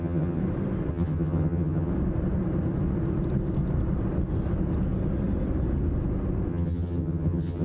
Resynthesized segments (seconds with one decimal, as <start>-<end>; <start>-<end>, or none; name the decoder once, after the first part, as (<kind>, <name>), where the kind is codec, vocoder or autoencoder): 0.0-0.4 (vocoder, HiFi-GAN); 0.9-1.9; 6.5-7.6